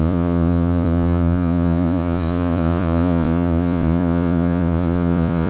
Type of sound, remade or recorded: remade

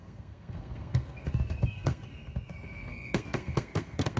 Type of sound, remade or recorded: remade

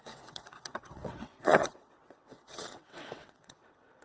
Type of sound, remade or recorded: remade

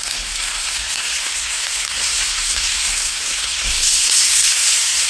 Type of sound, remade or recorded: remade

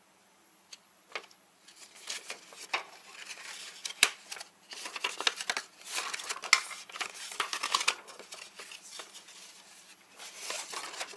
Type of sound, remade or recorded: recorded